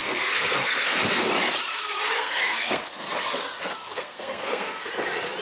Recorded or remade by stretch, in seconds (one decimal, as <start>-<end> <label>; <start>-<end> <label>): 0.0-1.3 remade; 1.3-2.2 recorded; 2.2-3.0 remade; 3.0-3.9 recorded; 3.9-4.9 remade; 4.9-5.4 recorded